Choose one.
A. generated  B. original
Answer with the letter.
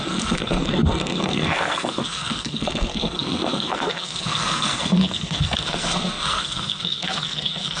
A